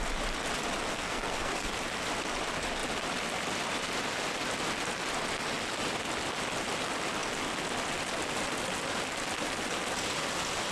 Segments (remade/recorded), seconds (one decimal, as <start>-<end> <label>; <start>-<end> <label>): 0.0-0.9 recorded; 0.9-1.7 remade; 1.7-10.7 recorded